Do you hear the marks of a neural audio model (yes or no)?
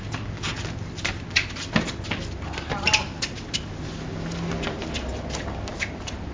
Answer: no